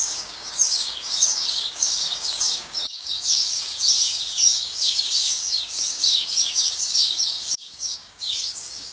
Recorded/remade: remade